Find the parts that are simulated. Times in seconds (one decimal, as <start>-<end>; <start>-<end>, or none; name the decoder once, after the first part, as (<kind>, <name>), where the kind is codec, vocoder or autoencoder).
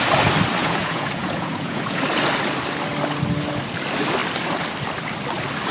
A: 0.6-2.0 (vocoder, Vocos)